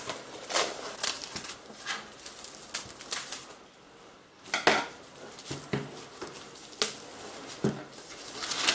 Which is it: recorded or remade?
recorded